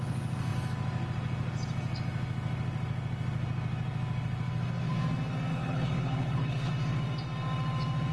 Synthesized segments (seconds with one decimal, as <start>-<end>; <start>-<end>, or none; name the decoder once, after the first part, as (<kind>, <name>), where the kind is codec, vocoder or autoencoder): 5.5-6.7 (codec, HILCodec)